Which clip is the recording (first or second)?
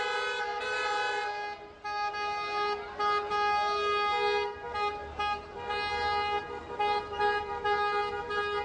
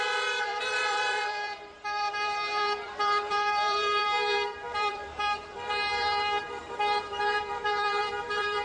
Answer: first